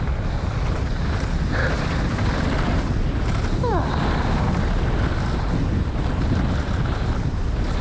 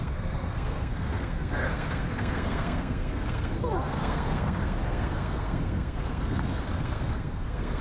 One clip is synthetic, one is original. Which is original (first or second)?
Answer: first